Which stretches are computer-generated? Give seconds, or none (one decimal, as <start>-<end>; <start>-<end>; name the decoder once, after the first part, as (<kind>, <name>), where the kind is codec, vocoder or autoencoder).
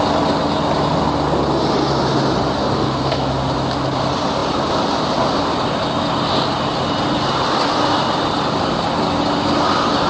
2.6-3.3 (codec, SNAC)